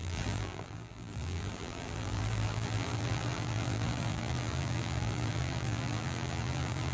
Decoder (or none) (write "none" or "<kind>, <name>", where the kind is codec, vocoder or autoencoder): vocoder, BigVGAN v2